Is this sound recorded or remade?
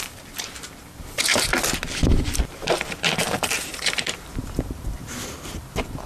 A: remade